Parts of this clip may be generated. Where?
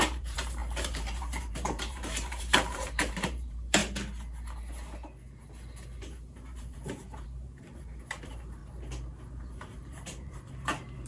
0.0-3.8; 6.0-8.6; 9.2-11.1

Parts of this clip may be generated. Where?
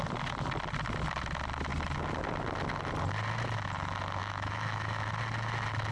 4.2-5.1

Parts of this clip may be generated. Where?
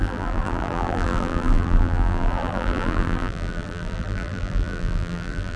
0.0-5.6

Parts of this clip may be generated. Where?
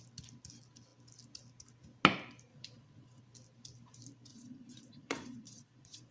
2.5-3.2; 4.3-6.1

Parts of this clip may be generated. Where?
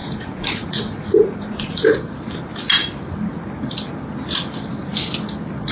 0.0-1.8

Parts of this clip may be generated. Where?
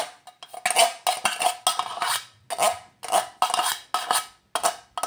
none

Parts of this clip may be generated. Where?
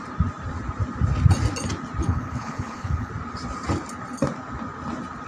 2.0-3.1